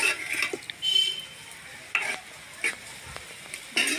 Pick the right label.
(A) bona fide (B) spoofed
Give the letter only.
A